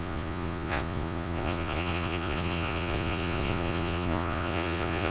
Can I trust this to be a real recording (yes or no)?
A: no